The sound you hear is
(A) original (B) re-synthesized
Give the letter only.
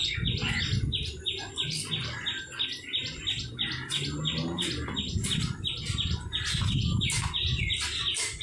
A